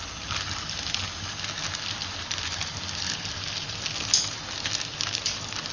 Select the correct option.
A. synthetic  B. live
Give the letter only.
B